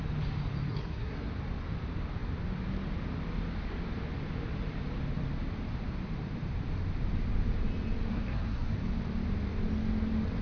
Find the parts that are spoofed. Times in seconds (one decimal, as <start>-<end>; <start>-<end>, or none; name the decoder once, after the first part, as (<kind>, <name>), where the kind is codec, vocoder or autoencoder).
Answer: 0.7-1.3 (codec, SNAC); 8.1-8.7